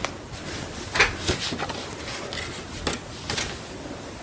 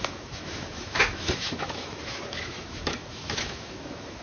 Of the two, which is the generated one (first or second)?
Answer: second